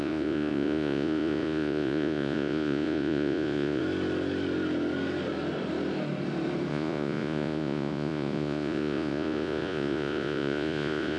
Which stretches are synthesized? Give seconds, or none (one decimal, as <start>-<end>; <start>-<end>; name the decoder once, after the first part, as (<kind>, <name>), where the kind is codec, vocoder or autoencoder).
0.0-3.8 (vocoder, Vocos); 6.7-11.2